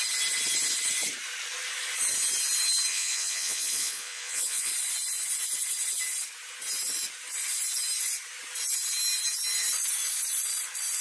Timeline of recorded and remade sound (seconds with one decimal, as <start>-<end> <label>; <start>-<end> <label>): 0.0-2.9 recorded; 2.9-4.7 remade; 4.7-11.0 recorded